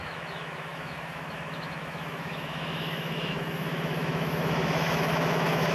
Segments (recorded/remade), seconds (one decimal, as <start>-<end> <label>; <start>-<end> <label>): 0.0-5.7 remade